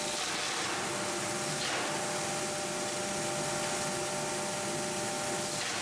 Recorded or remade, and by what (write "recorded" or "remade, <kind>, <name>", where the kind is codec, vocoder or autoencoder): recorded